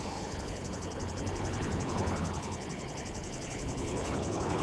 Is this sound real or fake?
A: fake